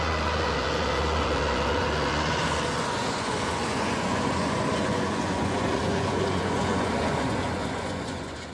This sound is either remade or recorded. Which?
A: remade